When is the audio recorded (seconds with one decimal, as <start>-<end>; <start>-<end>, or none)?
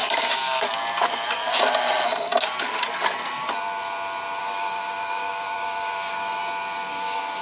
0.0-4.4; 6.4-6.9